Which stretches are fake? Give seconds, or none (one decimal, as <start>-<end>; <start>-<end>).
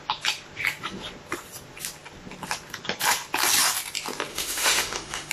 4.3-5.3